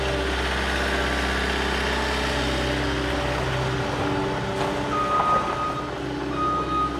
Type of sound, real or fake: real